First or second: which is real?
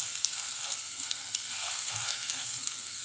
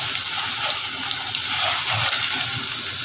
second